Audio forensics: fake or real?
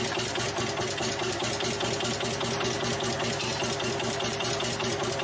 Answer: real